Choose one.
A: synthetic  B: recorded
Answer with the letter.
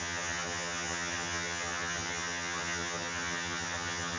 A